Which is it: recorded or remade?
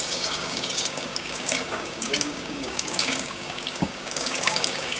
remade